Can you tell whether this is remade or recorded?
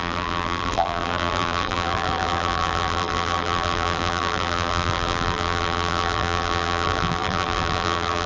remade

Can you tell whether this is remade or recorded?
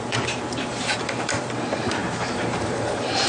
remade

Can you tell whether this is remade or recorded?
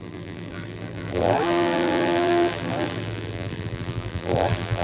remade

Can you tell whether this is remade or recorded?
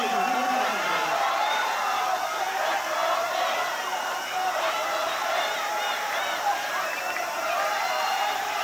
remade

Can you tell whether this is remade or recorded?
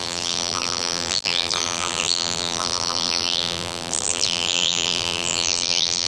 remade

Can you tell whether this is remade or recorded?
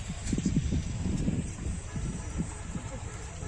remade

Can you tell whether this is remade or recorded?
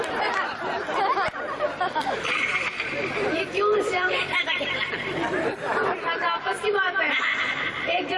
recorded